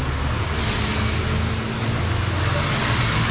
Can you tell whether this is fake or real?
real